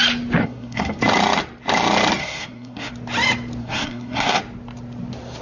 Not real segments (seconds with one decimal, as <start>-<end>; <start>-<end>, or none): 0.4-1.0; 2.2-2.9; 3.6-4.4